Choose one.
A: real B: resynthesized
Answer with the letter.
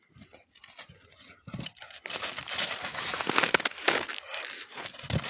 A